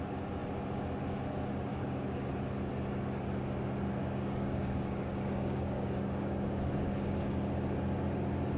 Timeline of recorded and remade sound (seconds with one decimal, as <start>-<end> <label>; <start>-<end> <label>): 0.0-1.7 recorded; 1.7-2.3 remade; 2.3-4.0 recorded; 4.0-7.5 remade; 7.5-8.6 recorded